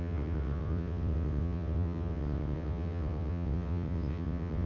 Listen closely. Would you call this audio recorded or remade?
remade